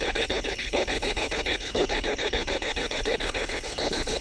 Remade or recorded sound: remade